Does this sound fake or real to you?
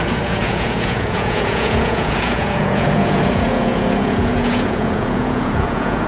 fake